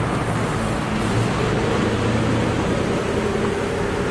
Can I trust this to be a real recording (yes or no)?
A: yes